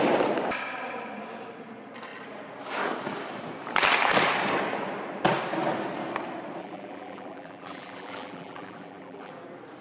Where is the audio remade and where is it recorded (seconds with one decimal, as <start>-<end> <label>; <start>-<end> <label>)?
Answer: 0.0-6.6 recorded; 6.6-9.3 remade; 9.3-9.8 recorded